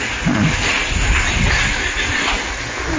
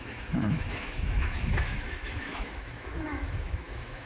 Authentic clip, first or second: first